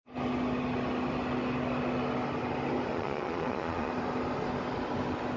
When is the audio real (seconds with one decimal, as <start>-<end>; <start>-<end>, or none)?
0.0-2.9; 3.9-5.4